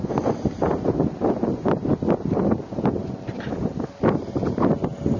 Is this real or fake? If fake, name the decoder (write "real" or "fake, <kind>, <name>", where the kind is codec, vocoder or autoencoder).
real